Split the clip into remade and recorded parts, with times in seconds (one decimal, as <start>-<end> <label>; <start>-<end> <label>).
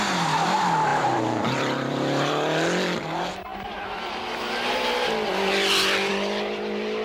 0.0-0.9 recorded; 0.9-2.3 remade; 2.3-7.0 recorded